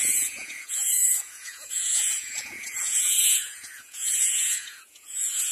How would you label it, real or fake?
fake